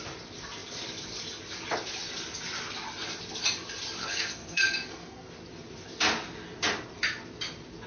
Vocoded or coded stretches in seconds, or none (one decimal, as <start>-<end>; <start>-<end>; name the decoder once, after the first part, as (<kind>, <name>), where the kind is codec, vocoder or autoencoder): 4.0-5.3 (codec, SNAC)